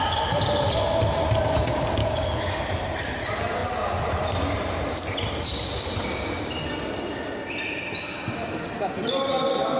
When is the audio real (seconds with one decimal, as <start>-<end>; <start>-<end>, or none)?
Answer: 0.0-2.0; 2.6-9.8